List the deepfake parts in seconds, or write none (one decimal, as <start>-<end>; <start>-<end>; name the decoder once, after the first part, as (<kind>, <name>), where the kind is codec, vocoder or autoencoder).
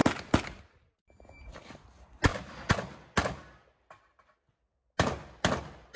none